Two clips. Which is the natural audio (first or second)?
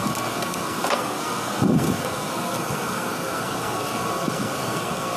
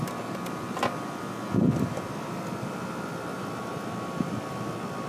second